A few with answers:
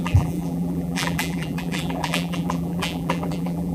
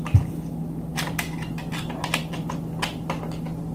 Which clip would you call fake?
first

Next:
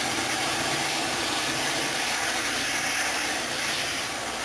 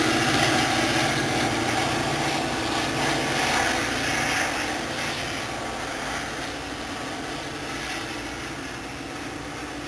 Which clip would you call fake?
first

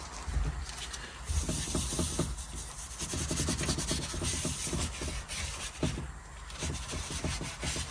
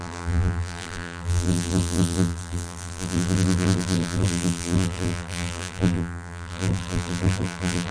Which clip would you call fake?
second